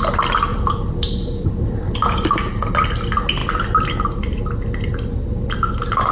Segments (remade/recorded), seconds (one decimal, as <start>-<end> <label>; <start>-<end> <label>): 0.0-0.5 recorded; 0.5-2.5 remade; 2.5-3.4 recorded; 3.4-4.2 remade; 4.2-6.1 recorded